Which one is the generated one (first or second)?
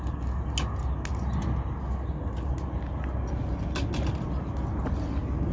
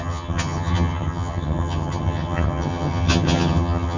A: second